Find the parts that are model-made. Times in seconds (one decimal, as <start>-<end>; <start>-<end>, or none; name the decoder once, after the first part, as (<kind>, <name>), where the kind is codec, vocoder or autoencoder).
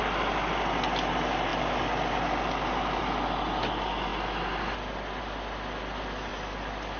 6.3-7.0 (vocoder, BigVGAN v2)